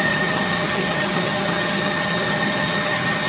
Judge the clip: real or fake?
fake